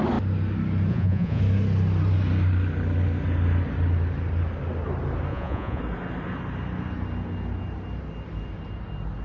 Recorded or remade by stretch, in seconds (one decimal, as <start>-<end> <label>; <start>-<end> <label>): 0.0-0.9 recorded; 0.9-1.4 remade; 1.4-5.3 recorded; 5.3-5.8 remade; 5.8-9.2 recorded